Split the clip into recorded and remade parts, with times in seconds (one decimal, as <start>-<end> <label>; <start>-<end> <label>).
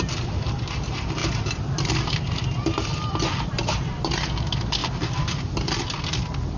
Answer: 0.0-1.2 recorded; 1.2-4.1 remade; 4.1-4.8 recorded; 4.8-5.5 remade; 5.5-6.6 recorded